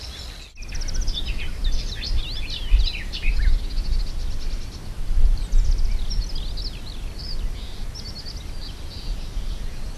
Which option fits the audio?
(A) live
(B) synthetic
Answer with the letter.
A